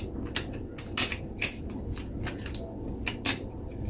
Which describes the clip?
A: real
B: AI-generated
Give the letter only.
A